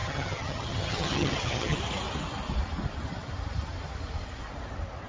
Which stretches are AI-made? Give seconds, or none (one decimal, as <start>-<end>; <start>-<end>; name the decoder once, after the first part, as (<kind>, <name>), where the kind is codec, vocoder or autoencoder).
0.0-1.8 (vocoder, HiFi-GAN)